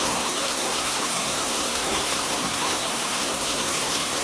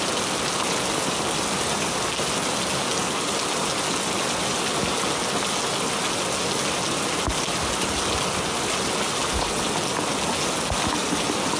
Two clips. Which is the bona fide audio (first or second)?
second